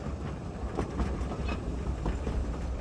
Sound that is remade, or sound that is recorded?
recorded